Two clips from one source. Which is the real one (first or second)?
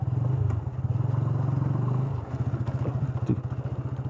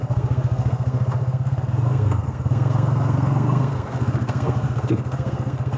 first